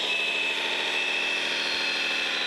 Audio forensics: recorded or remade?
remade